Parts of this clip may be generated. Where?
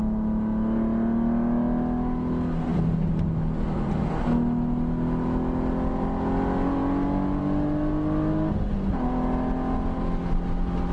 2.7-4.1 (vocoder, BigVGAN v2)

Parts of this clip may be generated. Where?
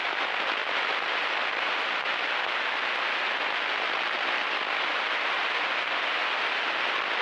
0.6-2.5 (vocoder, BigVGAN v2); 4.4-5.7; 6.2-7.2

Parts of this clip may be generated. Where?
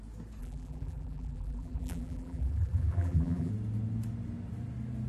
0.4-3.5 (vocoder, BigVGAN v2)